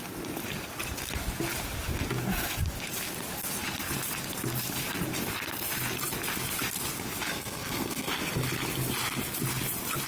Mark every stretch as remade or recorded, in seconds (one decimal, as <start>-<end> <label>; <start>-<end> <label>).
0.0-7.3 recorded; 7.3-8.1 remade; 8.1-10.1 recorded